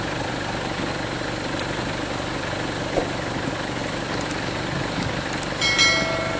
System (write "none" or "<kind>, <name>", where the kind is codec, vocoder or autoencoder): none